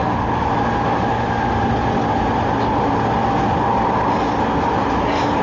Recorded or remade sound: recorded